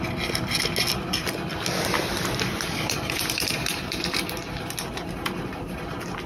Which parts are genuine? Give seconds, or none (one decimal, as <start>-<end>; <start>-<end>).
0.0-2.0; 5.8-6.3